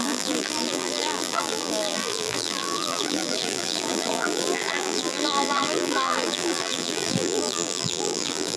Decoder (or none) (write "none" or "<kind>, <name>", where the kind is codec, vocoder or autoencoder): vocoder, BigVGAN v2